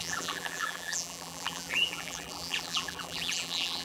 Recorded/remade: remade